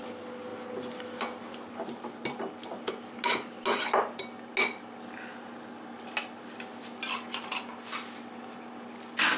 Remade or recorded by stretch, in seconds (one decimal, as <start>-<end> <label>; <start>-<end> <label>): 0.0-9.4 recorded